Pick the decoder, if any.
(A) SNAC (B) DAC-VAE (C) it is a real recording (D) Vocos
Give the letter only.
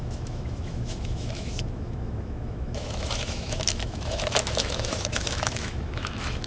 B